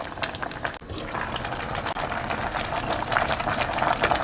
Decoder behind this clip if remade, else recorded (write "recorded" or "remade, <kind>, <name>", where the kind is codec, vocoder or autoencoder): recorded